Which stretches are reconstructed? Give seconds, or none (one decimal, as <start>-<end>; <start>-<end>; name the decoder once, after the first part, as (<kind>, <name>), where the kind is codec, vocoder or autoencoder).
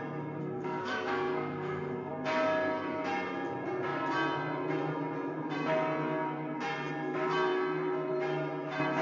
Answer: 0.4-2.1 (codec, SNAC)